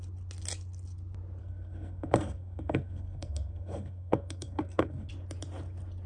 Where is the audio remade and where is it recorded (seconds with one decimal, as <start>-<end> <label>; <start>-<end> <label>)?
0.0-1.4 recorded; 1.4-5.1 remade; 5.1-6.1 recorded